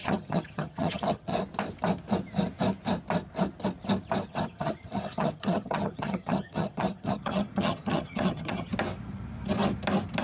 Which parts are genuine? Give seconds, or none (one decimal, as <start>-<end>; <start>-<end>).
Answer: 1.3-4.3; 8.7-10.2